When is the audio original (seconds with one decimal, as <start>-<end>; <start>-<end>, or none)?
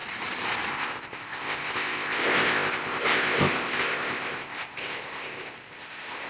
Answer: 0.0-0.7